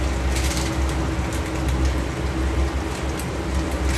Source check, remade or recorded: recorded